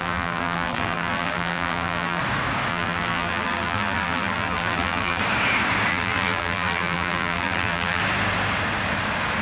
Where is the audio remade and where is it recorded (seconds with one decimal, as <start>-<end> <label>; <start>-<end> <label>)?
0.0-2.2 remade; 2.2-2.7 recorded; 2.7-5.2 remade; 5.2-5.9 recorded; 5.9-8.0 remade; 8.0-9.4 recorded